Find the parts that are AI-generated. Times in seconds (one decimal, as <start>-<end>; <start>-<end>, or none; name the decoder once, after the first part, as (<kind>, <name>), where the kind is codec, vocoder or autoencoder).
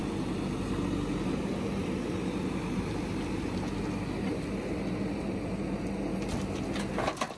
none